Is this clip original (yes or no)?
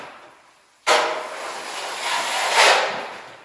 yes